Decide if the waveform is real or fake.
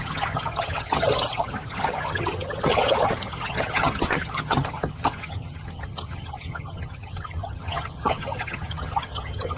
fake